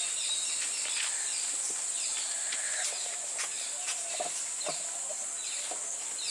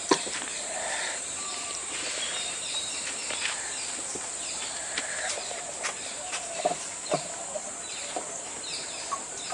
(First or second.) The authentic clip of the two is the first